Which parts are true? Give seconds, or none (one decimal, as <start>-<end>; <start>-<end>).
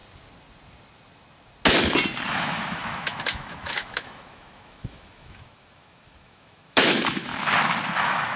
0.0-2.3; 7.3-8.0